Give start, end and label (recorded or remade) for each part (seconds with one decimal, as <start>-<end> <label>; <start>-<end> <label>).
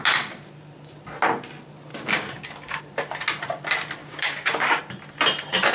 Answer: 0.0-1.9 recorded; 1.9-2.8 remade; 2.8-4.0 recorded; 4.0-4.8 remade; 4.8-5.7 recorded